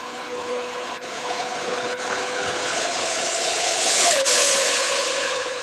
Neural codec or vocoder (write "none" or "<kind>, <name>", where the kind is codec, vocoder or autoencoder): codec, HILCodec